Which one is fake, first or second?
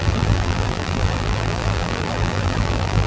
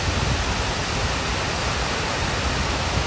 first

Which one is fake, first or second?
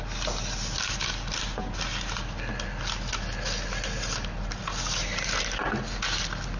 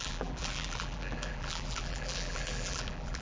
second